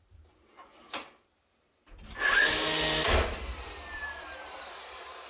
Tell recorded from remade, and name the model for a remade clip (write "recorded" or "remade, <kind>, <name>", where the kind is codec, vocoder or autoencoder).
recorded